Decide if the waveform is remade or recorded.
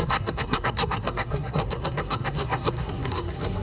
remade